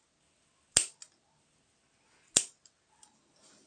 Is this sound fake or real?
real